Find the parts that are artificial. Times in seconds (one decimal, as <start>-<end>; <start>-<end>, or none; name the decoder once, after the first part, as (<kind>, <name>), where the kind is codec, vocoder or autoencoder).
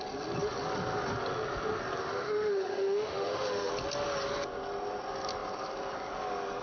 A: 2.0-3.7 (autoencoder, DAC-VAE)